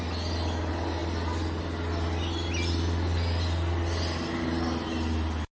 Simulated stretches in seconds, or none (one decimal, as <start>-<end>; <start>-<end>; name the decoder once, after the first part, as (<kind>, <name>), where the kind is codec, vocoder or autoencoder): none